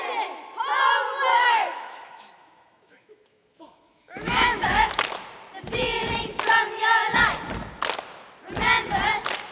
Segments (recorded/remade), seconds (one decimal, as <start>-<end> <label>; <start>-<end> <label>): 0.0-1.3 recorded; 1.3-5.2 remade; 5.2-9.5 recorded